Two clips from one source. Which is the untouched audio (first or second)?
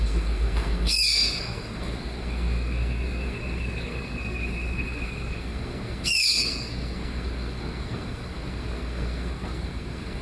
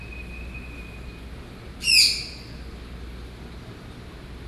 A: second